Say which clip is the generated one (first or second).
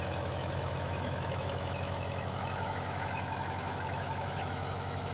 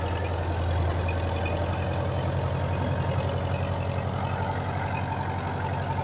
first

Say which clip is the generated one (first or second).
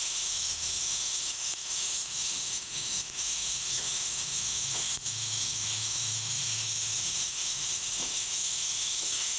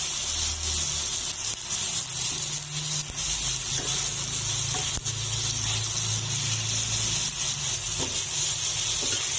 first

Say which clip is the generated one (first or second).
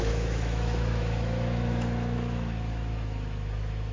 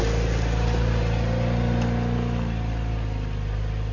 first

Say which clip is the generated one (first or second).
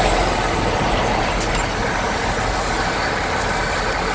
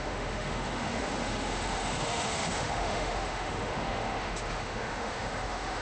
second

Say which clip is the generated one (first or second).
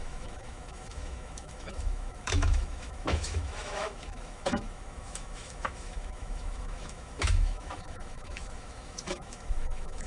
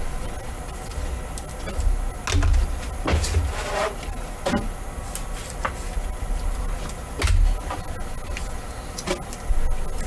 first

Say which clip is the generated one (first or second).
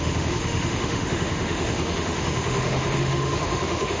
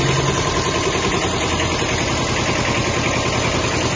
first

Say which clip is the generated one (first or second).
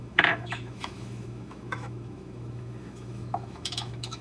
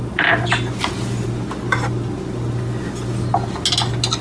first